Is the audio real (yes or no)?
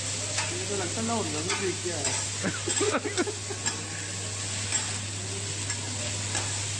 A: yes